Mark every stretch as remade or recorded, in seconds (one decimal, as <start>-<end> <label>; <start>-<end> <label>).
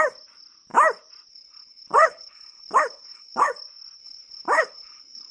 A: 0.0-1.3 recorded; 1.3-3.5 remade; 3.5-4.0 recorded; 4.0-5.3 remade